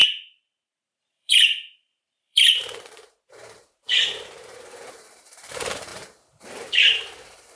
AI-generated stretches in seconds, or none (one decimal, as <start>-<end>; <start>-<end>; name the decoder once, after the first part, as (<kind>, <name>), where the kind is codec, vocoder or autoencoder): 0.0-7.6 (vocoder, BigVGAN v2)